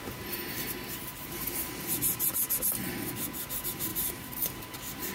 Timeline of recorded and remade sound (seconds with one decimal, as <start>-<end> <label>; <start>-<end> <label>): 0.0-3.9 recorded; 3.9-4.6 remade; 4.6-5.1 recorded